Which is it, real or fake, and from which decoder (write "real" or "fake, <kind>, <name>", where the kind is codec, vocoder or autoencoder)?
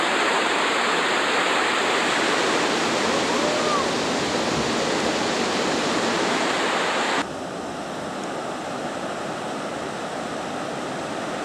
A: real